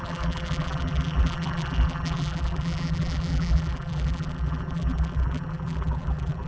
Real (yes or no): no